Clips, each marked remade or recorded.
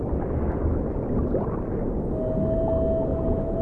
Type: recorded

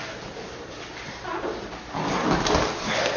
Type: recorded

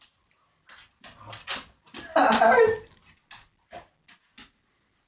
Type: recorded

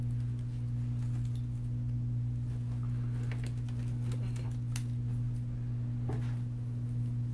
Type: recorded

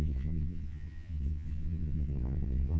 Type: remade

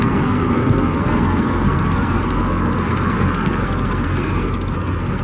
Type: remade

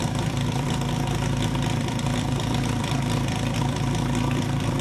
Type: remade